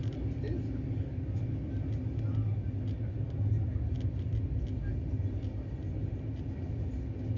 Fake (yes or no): no